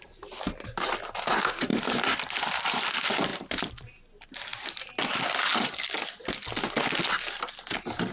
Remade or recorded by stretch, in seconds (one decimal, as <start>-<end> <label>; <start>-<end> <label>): 0.0-1.7 recorded; 1.7-2.5 remade; 2.5-3.3 recorded; 3.3-4.0 remade; 4.0-8.1 recorded

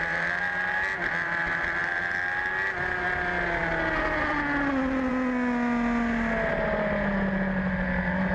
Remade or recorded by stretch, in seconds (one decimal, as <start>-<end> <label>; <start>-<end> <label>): 0.0-8.3 recorded

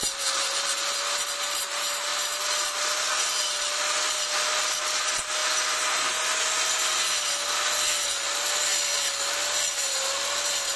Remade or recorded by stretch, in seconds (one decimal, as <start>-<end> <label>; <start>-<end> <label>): 0.0-10.8 recorded